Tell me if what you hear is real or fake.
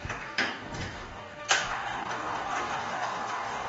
fake